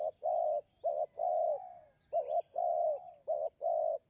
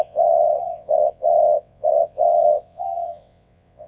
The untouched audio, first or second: first